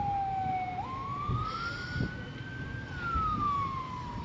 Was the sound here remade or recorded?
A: recorded